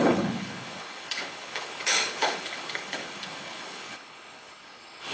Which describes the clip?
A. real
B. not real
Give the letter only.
B